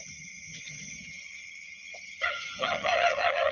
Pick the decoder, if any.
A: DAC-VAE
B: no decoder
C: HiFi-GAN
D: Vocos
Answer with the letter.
C